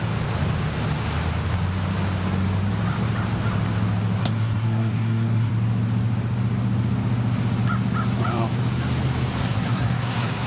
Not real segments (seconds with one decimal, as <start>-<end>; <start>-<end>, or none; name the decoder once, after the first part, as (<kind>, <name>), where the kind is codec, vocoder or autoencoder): 4.2-5.5 (codec, SNAC); 9.4-10.5